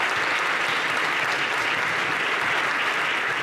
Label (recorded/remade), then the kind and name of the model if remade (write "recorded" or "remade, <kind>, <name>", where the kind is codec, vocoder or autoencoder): recorded